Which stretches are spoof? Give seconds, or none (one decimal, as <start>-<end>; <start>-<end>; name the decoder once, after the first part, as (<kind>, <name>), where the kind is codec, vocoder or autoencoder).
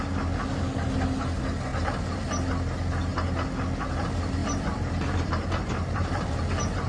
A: 1.7-2.2 (vocoder, BigVGAN v2); 4.4-6.5